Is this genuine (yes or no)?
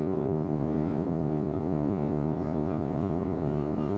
no